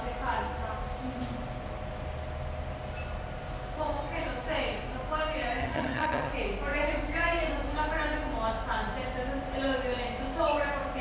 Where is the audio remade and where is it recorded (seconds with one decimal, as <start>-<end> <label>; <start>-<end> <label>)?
0.0-5.6 recorded; 5.6-6.3 remade; 6.3-11.0 recorded